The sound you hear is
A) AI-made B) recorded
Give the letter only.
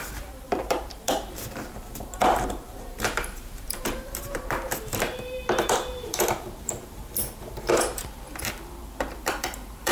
A